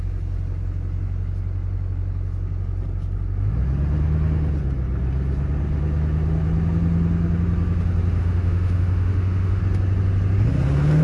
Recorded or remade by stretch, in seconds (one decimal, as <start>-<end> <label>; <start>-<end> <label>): 0.0-8.2 recorded; 8.2-9.6 remade; 9.6-11.0 recorded